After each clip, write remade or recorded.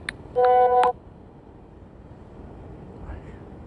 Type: recorded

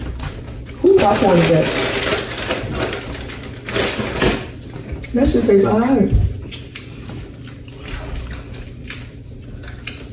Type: recorded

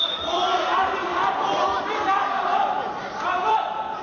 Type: remade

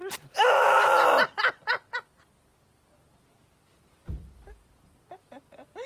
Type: recorded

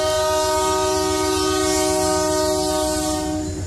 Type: recorded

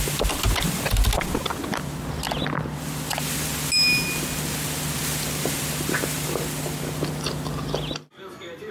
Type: recorded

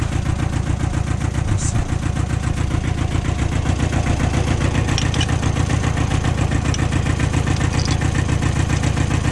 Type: recorded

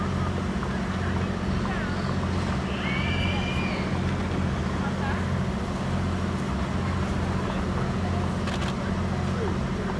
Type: recorded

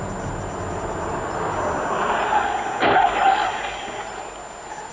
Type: recorded